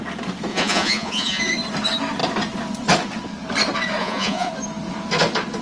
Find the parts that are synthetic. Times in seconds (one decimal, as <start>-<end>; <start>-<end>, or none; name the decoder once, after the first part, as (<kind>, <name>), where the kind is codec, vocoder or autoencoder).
0.5-1.4 (vocoder, Vocos); 4.0-4.5